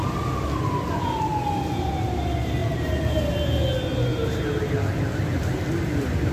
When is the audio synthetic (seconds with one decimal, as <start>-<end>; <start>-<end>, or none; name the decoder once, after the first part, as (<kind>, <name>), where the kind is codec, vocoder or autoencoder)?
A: none